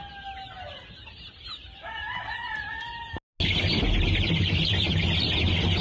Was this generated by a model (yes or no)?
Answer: no